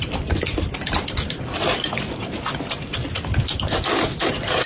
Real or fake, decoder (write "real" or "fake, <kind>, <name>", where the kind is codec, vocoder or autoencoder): real